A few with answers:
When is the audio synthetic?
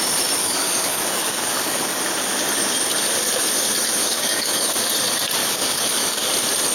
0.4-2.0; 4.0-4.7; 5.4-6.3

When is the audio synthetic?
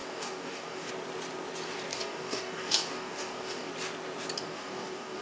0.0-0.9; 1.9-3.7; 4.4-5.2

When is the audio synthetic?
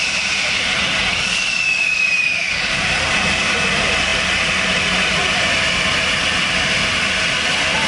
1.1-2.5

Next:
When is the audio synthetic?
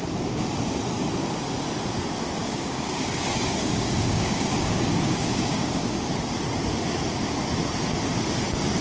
2.4-6.1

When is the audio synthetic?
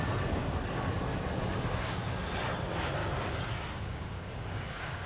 1.4-2.1; 3.0-5.1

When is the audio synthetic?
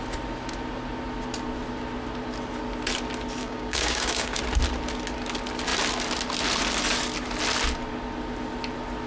3.4-4.4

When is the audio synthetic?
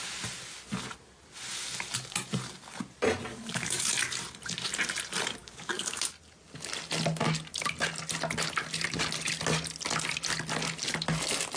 3.3-3.9; 5.4-6.0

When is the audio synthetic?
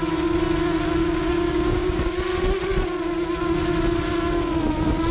1.0-1.9